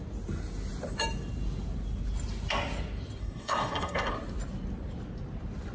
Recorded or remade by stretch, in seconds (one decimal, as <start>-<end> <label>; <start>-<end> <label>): 0.0-3.2 recorded; 3.2-4.1 remade; 4.1-5.7 recorded